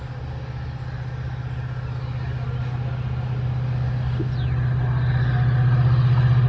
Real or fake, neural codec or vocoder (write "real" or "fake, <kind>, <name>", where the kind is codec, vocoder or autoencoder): real